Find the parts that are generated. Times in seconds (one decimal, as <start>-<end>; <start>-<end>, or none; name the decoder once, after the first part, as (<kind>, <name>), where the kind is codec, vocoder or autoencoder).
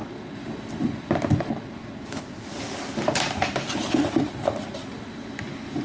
none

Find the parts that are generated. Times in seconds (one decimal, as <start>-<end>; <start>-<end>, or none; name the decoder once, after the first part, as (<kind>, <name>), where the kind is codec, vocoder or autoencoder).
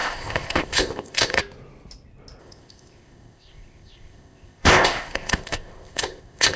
0.0-1.4 (codec, ZipCodec); 2.4-6.6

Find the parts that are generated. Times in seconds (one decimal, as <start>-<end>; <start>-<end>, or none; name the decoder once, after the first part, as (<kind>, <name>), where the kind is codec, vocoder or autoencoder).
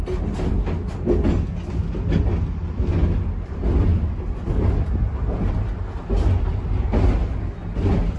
3.9-5.8 (vocoder, BigVGAN v2)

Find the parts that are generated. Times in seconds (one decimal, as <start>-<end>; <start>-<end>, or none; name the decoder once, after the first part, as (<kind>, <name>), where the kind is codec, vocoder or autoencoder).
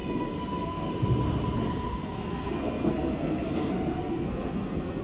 0.0-0.9 (codec, SNAC); 1.9-5.0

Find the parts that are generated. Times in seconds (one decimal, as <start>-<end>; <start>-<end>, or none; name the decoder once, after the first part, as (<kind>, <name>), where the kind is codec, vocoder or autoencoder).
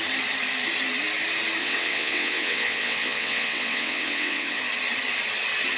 1.6-4.6 (vocoder, WaveNeXt)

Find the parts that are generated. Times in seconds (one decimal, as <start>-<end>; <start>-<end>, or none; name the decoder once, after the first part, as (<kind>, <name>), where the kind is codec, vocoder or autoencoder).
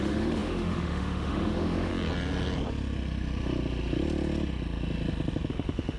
0.0-1.9 (autoencoder, DAC-VAE); 5.5-6.0